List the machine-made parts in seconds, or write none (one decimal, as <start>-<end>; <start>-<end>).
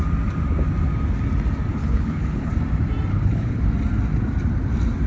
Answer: 1.7-2.5; 3.1-3.6